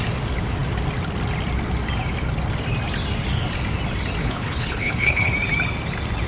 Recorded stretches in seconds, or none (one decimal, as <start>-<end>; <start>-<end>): 0.0-4.2; 5.3-6.3